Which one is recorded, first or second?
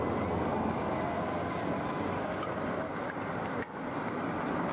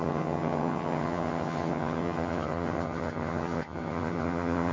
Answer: first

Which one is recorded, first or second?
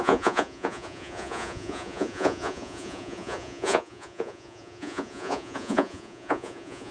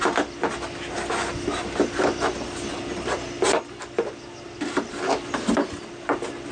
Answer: second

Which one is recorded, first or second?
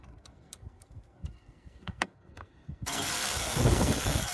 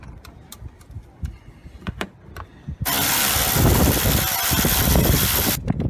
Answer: second